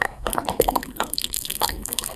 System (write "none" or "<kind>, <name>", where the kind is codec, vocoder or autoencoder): codec, SNAC